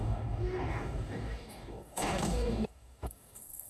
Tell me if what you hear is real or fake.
fake